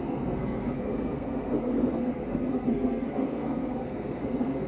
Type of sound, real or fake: fake